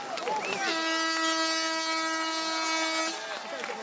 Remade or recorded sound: recorded